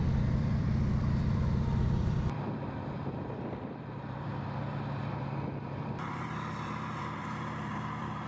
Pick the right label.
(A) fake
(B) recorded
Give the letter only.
A